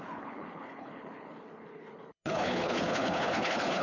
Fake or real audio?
fake